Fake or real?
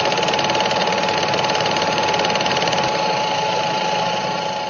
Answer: fake